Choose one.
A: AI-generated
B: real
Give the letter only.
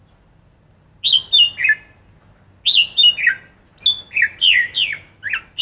B